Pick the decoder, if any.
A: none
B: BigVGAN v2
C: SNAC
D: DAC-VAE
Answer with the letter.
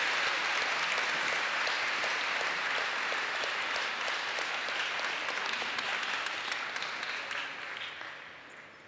A